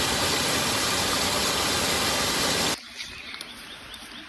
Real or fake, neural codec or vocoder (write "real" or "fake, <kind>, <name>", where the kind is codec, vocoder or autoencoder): real